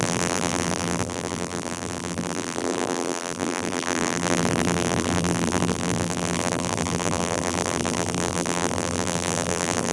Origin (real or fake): fake